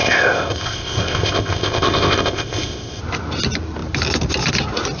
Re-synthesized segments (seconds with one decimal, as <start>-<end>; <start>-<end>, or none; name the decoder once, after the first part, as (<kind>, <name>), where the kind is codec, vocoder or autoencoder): 0.0-3.0 (codec, ZipCodec)